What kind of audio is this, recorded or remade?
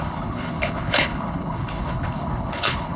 remade